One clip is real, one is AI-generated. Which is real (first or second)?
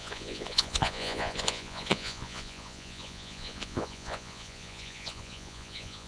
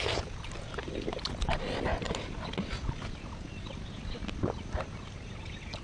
second